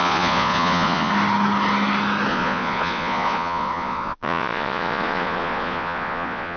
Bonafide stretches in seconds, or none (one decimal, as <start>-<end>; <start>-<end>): 1.1-2.3